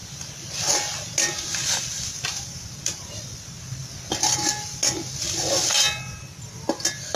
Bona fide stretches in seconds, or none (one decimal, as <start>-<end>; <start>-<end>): 0.0-7.2